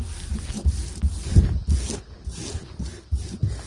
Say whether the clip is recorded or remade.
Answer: recorded